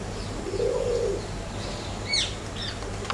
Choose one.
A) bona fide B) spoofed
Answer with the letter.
A